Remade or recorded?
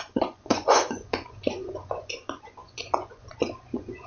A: remade